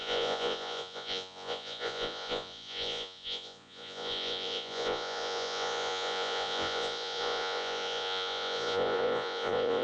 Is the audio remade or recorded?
remade